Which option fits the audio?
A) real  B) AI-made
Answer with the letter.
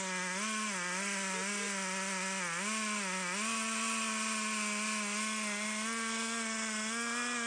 A